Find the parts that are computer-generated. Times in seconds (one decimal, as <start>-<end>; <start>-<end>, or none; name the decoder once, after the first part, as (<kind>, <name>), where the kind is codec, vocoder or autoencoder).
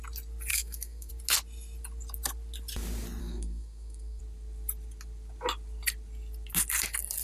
0.5-1.1 (codec, SNAC); 3.2-4.2